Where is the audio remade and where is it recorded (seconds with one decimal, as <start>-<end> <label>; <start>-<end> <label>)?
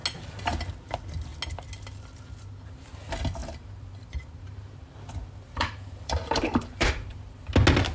0.0-3.4 recorded; 3.4-6.9 remade; 6.9-7.9 recorded